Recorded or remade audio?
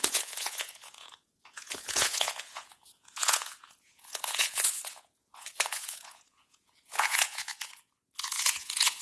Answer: remade